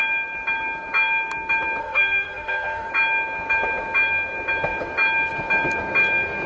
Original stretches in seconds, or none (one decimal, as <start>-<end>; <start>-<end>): 0.0-1.8; 2.9-6.5

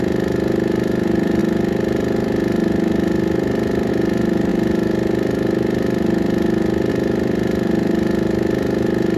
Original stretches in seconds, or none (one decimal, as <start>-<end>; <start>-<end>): 0.0-9.2